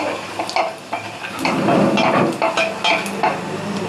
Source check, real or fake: real